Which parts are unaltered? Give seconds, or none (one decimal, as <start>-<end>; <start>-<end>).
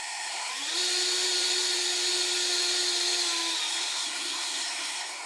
0.5-3.7